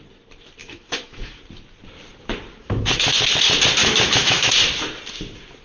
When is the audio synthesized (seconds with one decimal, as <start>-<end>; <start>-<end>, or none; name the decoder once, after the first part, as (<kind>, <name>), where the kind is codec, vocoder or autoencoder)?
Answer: 0.6-1.4 (autoencoder, DAC-VAE); 2.6-3.3; 3.8-4.5